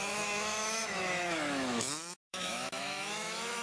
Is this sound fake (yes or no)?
yes